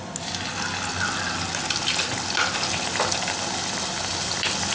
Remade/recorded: recorded